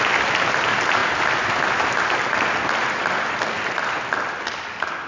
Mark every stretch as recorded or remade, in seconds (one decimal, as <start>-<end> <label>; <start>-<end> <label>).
0.0-5.1 recorded

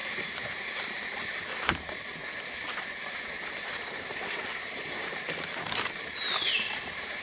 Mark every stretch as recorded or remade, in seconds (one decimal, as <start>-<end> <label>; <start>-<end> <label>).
0.0-7.2 recorded

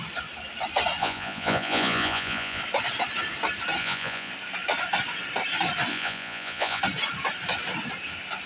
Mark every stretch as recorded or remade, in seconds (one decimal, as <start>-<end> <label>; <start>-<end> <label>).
0.0-1.0 recorded; 1.0-2.6 remade; 2.6-3.8 recorded; 3.8-4.3 remade; 4.3-5.9 recorded; 5.9-6.8 remade; 6.8-8.5 recorded

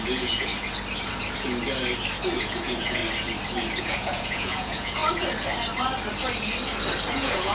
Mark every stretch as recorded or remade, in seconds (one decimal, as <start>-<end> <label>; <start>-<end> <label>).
0.0-0.5 remade; 0.5-2.4 recorded; 2.4-3.0 remade; 3.0-3.8 recorded; 3.8-5.0 remade; 5.0-7.1 recorded; 7.1-7.5 remade

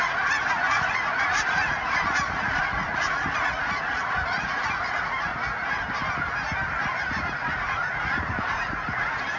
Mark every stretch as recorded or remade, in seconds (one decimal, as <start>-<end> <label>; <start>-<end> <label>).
0.0-5.3 remade; 5.3-6.8 recorded; 6.8-9.4 remade

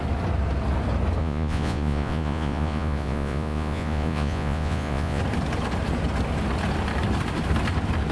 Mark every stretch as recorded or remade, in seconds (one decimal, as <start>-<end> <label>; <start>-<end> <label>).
0.0-1.2 recorded; 1.2-5.2 remade; 5.2-8.1 recorded